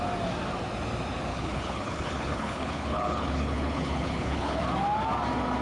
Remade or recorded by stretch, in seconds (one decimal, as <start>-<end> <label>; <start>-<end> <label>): 0.0-1.3 recorded; 1.3-4.6 remade; 4.6-5.6 recorded